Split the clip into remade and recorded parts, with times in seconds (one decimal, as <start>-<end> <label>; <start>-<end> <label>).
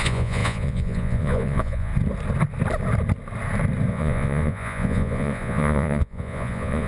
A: 0.0-1.9 remade; 1.9-3.9 recorded; 3.9-6.9 remade